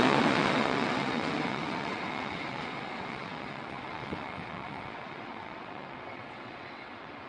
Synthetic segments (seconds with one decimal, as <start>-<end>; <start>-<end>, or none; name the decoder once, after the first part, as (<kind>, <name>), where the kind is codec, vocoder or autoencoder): 0.0-7.3 (vocoder, WaveNeXt)